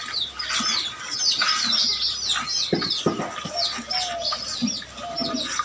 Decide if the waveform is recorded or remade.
recorded